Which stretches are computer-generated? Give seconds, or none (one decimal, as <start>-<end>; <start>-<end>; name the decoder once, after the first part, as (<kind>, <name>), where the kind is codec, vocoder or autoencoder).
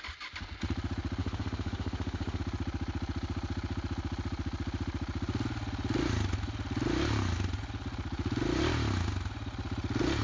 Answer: 1.2-2.4 (autoencoder, DAC-VAE)